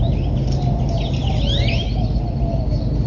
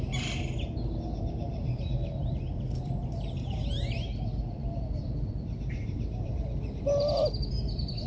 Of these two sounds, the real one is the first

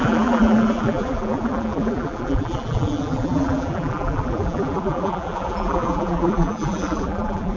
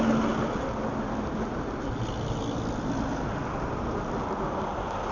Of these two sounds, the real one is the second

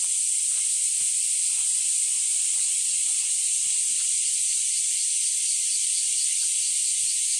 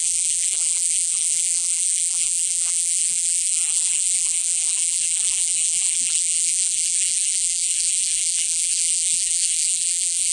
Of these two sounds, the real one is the first